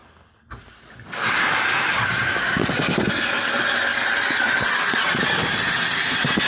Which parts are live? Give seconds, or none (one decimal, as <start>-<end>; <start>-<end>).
0.0-6.5